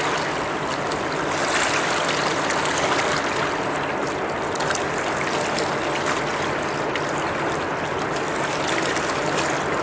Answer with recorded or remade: recorded